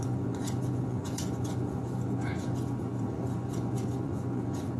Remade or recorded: remade